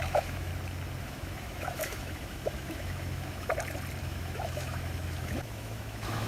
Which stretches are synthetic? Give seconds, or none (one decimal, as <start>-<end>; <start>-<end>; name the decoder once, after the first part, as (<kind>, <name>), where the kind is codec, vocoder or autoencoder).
0.0-0.5 (autoencoder, DAC-VAE); 1.0-3.5; 4.0-6.3